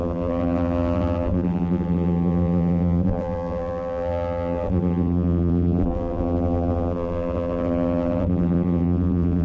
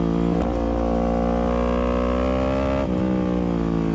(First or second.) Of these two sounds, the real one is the second